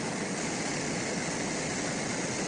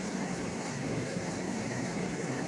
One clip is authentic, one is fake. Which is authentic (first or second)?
first